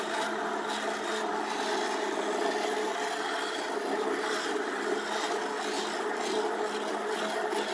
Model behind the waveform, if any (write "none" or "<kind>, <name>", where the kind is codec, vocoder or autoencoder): none